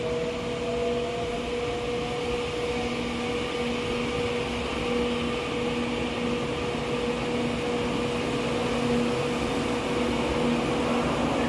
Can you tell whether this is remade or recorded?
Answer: recorded